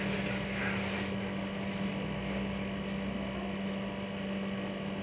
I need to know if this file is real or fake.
real